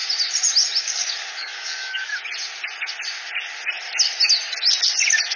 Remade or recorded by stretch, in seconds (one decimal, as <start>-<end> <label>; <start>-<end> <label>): 0.0-0.8 recorded; 0.8-2.1 remade; 2.1-5.4 recorded